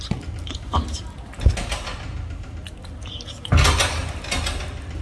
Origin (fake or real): real